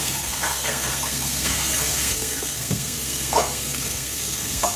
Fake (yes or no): yes